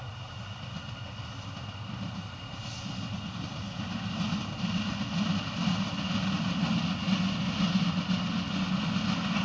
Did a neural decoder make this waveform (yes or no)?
no